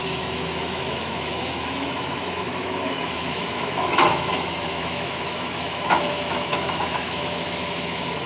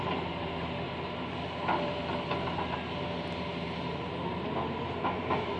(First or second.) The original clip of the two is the second